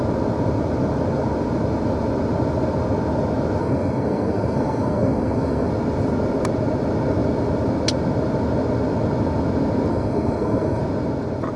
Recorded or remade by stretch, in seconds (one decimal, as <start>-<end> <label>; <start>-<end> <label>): 0.0-3.6 recorded; 3.6-5.7 remade; 5.7-9.9 recorded; 9.9-10.8 remade; 10.8-11.6 recorded